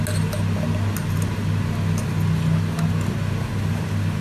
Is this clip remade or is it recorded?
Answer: recorded